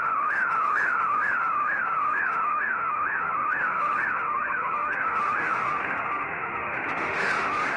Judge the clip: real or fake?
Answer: fake